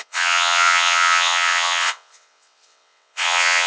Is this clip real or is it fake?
fake